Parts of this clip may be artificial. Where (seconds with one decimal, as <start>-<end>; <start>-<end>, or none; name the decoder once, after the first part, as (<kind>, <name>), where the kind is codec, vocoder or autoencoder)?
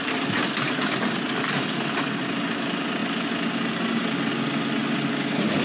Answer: none